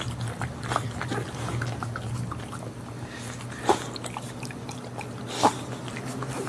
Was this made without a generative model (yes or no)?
yes